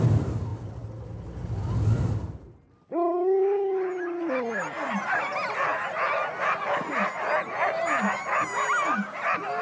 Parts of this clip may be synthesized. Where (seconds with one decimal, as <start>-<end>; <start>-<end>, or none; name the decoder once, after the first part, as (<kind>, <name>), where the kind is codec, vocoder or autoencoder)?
none